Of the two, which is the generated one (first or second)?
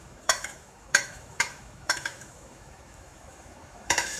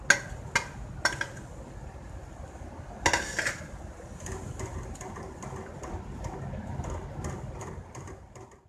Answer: first